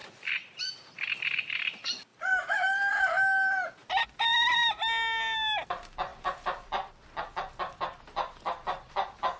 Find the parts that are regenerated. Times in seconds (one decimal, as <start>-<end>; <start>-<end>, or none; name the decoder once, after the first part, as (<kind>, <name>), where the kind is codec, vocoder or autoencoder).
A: 0.0-1.1 (vocoder, BigVGAN v2); 3.8-4.8; 6.1-6.9